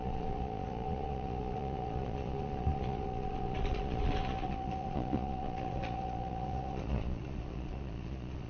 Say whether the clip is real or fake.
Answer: fake